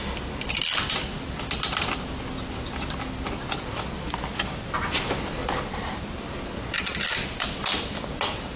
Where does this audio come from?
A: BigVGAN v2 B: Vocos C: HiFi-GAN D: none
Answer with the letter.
D